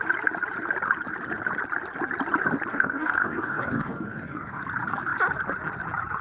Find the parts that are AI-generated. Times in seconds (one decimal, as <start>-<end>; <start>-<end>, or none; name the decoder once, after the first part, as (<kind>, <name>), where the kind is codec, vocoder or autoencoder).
2.7-4.6 (codec, DAC)